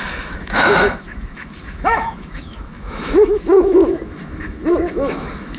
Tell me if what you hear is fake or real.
fake